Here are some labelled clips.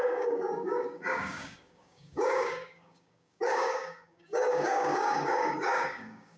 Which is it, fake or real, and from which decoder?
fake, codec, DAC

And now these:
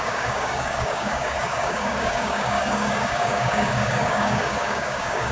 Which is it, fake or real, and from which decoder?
fake, codec, DAC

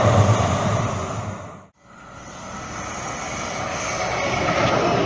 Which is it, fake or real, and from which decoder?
real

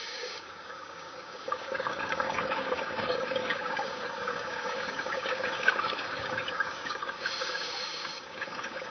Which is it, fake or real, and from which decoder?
fake, codec, DAC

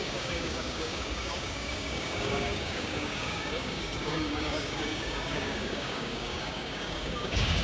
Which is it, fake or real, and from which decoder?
fake, codec, DAC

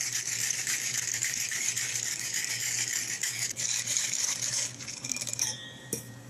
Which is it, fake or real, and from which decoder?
fake, codec, DAC